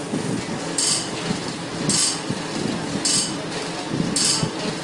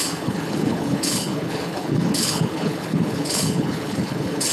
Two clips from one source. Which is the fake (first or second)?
second